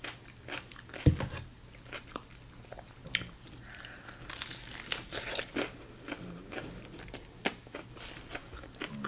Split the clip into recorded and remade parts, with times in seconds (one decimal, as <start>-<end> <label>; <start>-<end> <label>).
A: 0.0-9.1 recorded